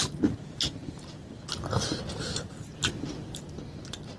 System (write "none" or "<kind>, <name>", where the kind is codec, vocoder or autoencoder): none